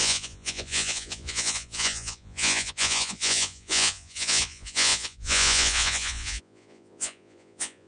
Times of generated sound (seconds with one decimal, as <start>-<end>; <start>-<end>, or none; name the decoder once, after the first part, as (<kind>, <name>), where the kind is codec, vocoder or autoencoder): 0.0-7.9 (vocoder, Vocos)